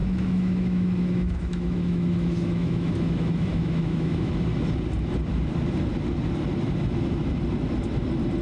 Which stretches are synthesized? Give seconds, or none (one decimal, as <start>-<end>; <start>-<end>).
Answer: 0.0-4.3